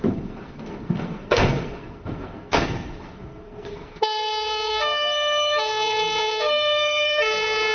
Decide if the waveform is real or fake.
fake